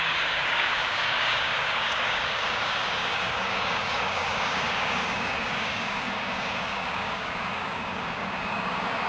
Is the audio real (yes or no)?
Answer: no